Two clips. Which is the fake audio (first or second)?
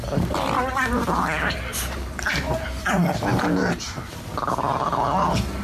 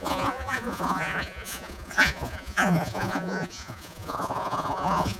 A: second